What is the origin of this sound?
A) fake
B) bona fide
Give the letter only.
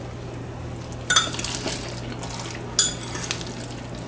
B